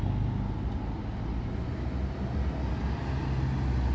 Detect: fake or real real